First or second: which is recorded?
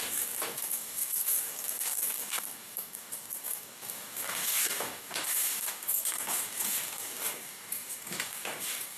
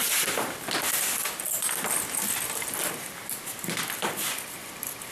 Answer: second